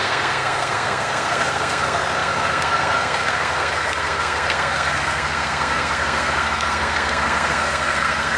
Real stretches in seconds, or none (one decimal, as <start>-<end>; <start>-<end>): none